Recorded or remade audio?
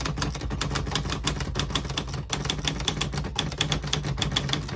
recorded